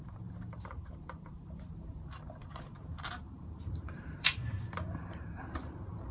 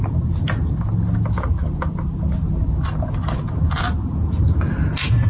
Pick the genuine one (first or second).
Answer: second